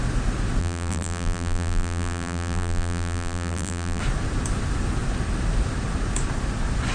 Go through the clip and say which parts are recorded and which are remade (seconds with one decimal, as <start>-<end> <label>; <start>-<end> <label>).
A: 0.0-0.6 recorded; 0.6-4.0 remade; 4.0-6.9 recorded